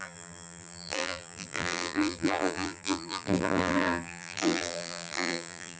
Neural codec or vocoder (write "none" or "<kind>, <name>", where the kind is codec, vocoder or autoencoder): vocoder, BigVGAN v2